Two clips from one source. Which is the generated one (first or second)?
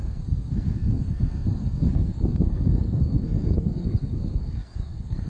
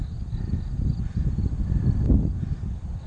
first